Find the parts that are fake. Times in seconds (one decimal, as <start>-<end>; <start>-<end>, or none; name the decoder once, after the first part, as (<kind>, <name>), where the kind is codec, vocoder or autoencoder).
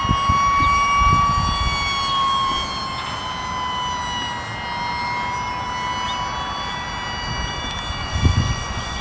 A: 8.0-9.0 (vocoder, Vocos)